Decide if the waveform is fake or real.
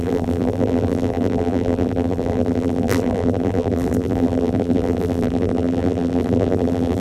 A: fake